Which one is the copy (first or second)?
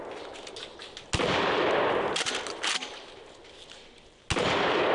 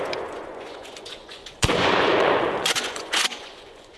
second